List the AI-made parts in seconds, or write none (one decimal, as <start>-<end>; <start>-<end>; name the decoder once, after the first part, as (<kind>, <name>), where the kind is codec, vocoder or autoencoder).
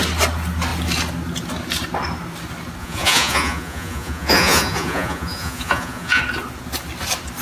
2.8-6.2 (vocoder, Vocos)